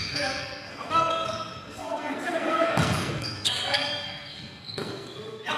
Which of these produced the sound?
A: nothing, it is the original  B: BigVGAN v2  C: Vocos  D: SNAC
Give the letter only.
D